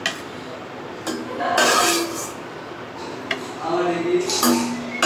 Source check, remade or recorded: recorded